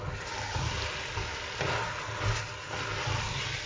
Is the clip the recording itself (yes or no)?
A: yes